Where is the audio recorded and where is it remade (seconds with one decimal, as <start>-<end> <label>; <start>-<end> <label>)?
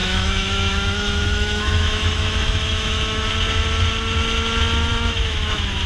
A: 0.0-3.3 remade; 3.3-4.9 recorded; 4.9-5.9 remade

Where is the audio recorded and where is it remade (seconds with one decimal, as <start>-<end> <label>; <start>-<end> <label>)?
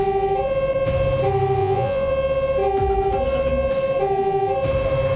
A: 0.0-1.6 recorded; 1.6-2.1 remade; 2.1-5.2 recorded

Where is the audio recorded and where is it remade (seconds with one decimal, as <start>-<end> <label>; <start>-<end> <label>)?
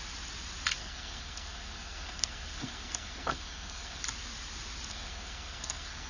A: 0.0-0.8 recorded; 0.8-4.0 remade; 4.0-4.9 recorded; 4.9-6.1 remade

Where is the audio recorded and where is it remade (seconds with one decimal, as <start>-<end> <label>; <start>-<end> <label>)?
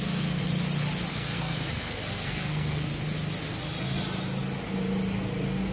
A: 0.0-0.4 remade; 0.4-1.1 recorded; 1.1-2.9 remade; 2.9-5.7 recorded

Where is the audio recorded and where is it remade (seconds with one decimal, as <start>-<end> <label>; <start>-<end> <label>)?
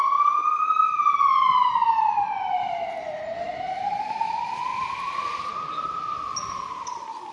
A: 0.0-7.3 recorded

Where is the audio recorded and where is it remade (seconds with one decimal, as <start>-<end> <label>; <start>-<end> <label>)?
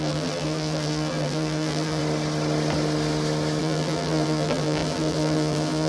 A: 0.0-2.0 remade; 2.0-3.6 recorded; 3.6-5.9 remade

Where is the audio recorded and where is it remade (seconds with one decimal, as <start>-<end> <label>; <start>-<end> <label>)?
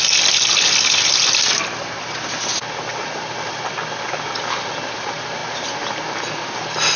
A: 0.0-7.0 recorded